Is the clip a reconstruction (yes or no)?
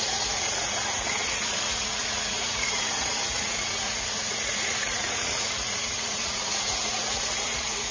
yes